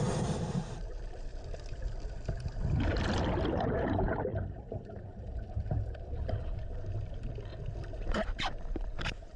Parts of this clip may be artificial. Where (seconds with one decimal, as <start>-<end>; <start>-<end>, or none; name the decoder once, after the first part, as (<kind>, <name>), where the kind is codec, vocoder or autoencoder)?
0.0-1.3 (vocoder, BigVGAN v2); 2.8-7.5; 8.4-9.4